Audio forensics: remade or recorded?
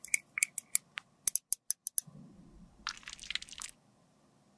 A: recorded